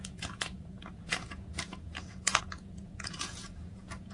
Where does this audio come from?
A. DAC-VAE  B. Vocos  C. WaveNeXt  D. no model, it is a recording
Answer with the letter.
B